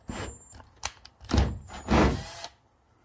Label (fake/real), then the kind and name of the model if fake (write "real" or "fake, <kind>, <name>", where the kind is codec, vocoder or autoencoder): real